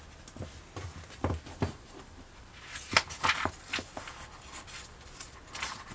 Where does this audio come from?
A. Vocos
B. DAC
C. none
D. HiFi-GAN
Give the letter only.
C